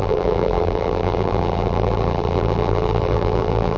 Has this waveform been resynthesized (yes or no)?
yes